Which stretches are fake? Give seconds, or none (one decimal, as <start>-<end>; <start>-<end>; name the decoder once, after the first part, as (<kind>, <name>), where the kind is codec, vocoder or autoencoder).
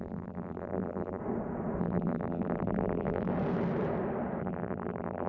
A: 0.0-1.2 (vocoder, BigVGAN v2); 1.8-3.3; 4.4-5.3